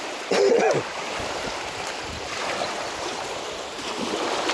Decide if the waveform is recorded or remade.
recorded